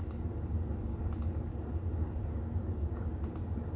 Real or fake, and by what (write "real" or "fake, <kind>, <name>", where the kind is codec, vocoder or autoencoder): real